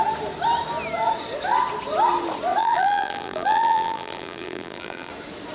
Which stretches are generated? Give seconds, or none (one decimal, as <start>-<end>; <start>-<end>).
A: 2.6-5.1